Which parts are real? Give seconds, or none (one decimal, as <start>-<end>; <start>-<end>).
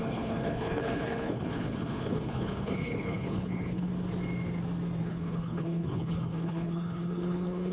3.9-5.0